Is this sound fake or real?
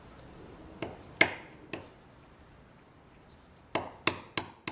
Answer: real